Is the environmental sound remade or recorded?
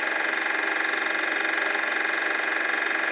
recorded